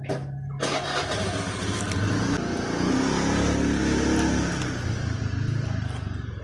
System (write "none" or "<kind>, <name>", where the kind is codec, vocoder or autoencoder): none